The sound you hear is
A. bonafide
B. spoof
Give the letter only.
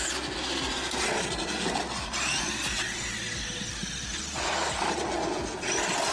A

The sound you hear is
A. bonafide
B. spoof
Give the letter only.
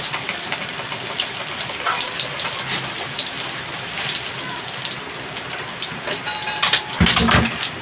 A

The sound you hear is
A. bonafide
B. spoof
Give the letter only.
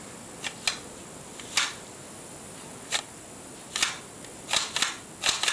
A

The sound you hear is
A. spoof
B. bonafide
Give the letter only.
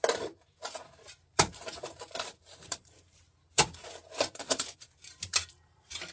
A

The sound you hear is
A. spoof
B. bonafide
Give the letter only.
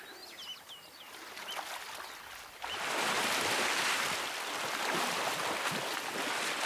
B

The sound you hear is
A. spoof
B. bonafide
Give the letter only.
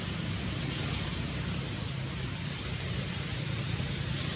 A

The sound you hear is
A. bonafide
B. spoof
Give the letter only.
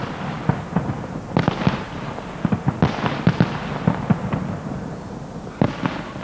A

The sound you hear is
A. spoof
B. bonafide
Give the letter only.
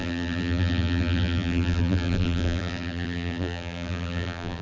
A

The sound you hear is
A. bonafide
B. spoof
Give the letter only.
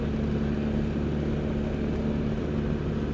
A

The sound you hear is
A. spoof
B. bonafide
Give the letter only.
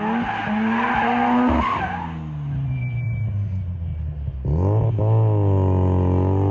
B